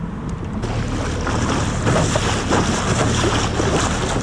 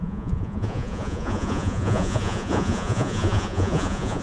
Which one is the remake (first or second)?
second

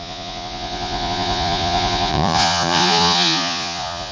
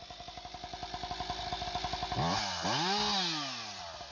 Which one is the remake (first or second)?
first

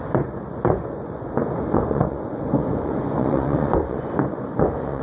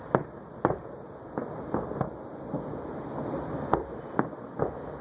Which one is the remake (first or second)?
first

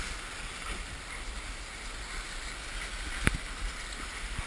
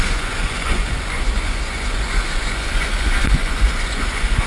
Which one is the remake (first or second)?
second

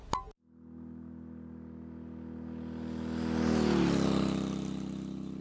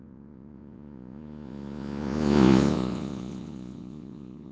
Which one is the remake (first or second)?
second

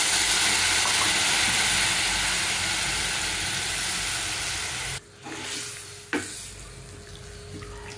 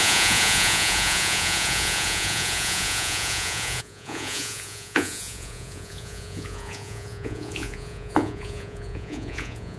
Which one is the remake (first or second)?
second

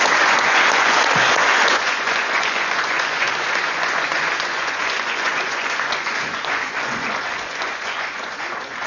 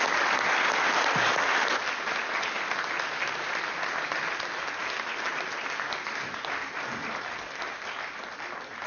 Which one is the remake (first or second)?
first